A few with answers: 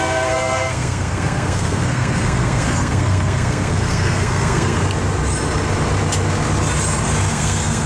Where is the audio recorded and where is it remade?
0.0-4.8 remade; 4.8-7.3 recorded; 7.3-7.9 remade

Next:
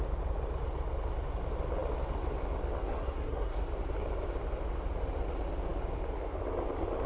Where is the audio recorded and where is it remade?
0.0-2.8 recorded; 2.8-3.6 remade; 3.6-7.1 recorded

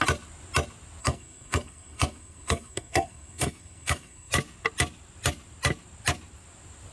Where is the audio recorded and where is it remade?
0.0-1.0 recorded; 1.0-4.3 remade; 4.3-6.9 recorded

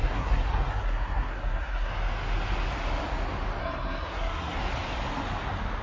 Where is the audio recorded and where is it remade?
0.0-1.9 remade; 1.9-3.6 recorded; 3.6-4.6 remade; 4.6-5.8 recorded